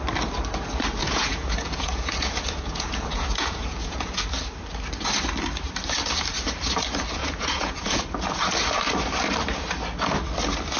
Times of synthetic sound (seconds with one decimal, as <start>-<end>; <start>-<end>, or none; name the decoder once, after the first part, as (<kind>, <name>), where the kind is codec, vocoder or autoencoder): 1.0-4.1 (vocoder, Vocos); 7.2-8.0